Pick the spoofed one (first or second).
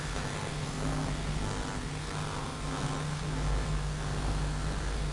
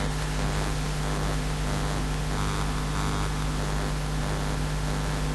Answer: first